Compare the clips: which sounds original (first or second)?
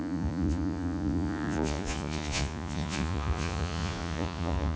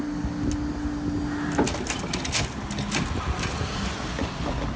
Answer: second